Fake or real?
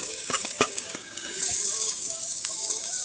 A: fake